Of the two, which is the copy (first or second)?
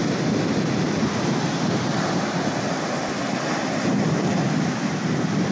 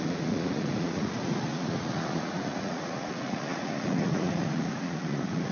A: second